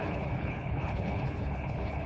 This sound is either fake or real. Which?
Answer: fake